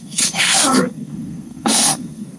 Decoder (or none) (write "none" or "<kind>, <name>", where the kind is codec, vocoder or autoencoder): codec, SNAC